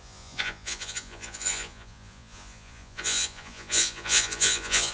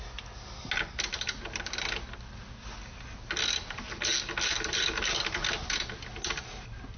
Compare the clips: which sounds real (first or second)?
second